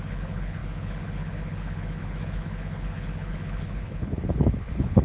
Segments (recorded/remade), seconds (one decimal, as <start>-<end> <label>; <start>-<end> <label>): 0.0-5.0 remade